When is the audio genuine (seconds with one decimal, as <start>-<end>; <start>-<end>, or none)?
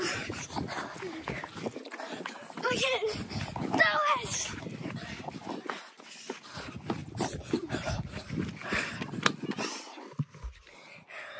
0.0-11.4